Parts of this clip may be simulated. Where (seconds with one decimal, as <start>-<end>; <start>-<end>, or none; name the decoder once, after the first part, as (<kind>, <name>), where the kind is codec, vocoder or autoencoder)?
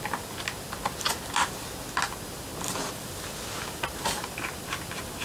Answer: none